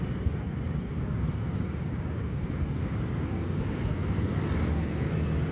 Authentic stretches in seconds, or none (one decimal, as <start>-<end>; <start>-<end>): 0.0-0.9; 2.2-2.8; 3.8-5.5